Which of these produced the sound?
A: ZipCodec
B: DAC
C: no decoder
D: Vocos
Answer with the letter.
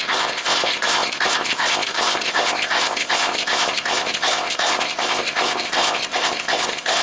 A